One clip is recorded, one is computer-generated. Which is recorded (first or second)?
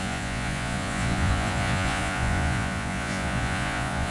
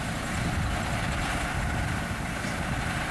second